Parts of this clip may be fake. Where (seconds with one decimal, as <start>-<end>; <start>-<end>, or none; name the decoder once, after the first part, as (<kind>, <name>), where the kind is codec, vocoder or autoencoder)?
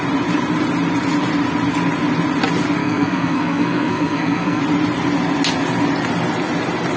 2.8-4.6 (codec, SNAC)